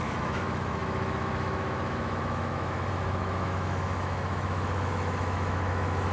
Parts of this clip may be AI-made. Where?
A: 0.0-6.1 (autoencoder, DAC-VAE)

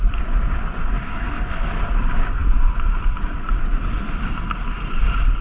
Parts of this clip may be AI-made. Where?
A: 1.1-1.7 (codec, SNAC)